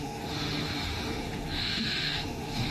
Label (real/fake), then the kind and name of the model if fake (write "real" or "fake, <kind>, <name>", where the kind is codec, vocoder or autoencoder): fake, autoencoder, DAC-VAE